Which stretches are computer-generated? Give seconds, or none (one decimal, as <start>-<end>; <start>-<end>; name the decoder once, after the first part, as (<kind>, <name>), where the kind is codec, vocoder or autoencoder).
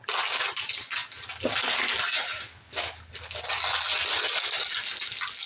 none